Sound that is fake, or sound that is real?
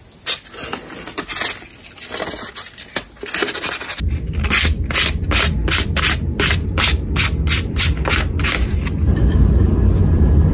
real